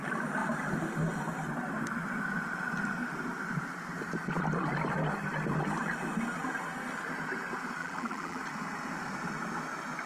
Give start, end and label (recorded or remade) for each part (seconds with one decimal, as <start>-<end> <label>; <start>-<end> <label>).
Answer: 0.0-7.8 recorded; 7.8-8.4 remade; 8.4-10.1 recorded